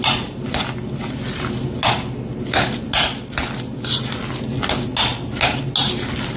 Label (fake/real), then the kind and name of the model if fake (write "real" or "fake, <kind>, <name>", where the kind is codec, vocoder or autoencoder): real